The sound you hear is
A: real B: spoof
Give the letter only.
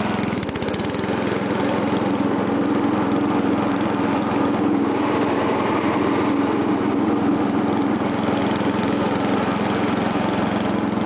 A